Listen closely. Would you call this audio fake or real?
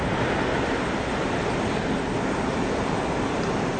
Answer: real